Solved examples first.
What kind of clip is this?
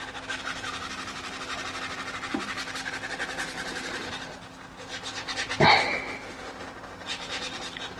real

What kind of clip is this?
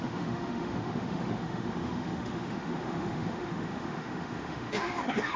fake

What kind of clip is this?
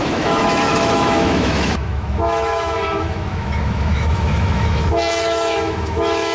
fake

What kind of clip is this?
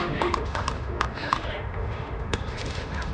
fake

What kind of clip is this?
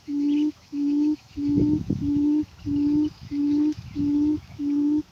fake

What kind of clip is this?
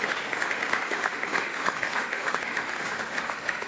fake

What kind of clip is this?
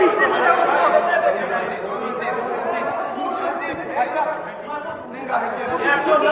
real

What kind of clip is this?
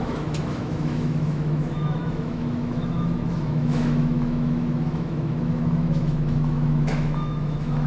fake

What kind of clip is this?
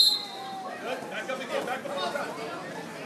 real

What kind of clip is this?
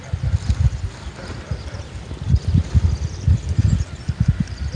real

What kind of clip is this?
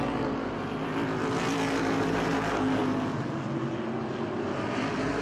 real